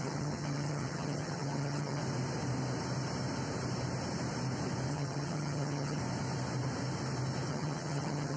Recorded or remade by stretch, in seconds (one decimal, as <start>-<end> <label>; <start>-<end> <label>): 0.0-2.0 remade; 2.0-4.9 recorded; 4.9-6.0 remade; 6.0-7.5 recorded; 7.5-8.4 remade